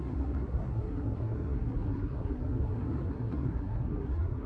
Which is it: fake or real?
fake